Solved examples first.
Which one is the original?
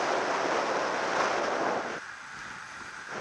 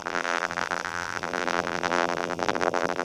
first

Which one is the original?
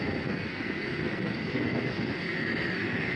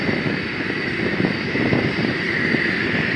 second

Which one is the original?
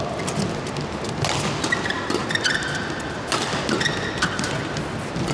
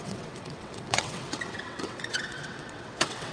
first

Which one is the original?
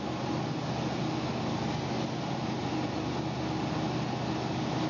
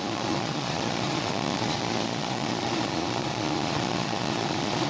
first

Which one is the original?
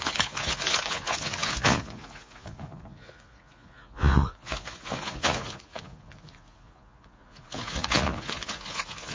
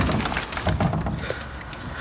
second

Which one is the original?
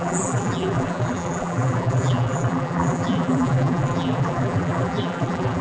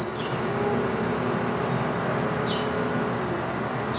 second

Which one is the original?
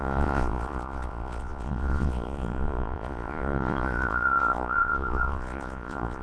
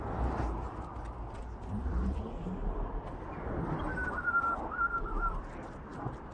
second